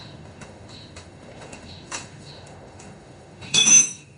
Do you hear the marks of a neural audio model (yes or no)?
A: yes